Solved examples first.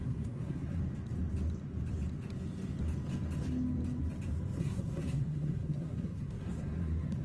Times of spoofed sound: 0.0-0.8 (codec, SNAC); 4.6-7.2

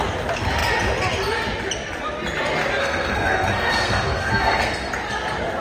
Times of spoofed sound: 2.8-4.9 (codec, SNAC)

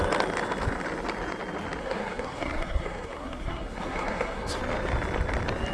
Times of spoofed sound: 1.8-4.6 (codec, SNAC)

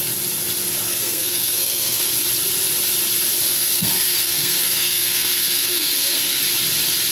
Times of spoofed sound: 0.9-2.1 (codec, SNAC); 3.5-6.4

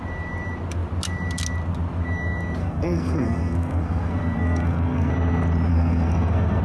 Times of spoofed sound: 2.6-5.1 (codec, SNAC); 5.7-6.6

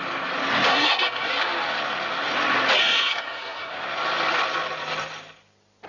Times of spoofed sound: 0.7-1.3 (codec, SNAC); 2.8-3.7

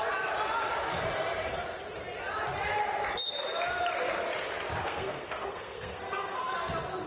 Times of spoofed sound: 4.8-6.5 (codec, SNAC)